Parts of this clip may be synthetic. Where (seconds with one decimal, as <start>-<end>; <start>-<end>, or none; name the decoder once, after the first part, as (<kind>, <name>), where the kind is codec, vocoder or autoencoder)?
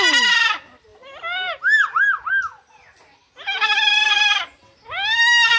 none